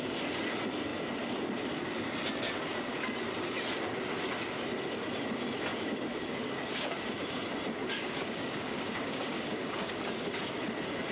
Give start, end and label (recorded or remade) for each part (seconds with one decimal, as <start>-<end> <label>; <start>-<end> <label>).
0.0-5.7 recorded; 5.7-7.0 remade; 7.0-7.8 recorded; 7.8-9.9 remade; 9.9-11.1 recorded